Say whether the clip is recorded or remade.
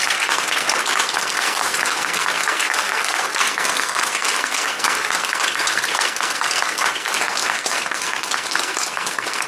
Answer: remade